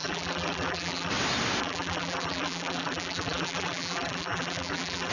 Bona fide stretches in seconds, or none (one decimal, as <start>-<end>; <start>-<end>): 1.1-1.6